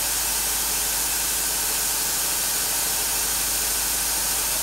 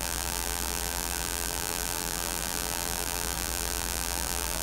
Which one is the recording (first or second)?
first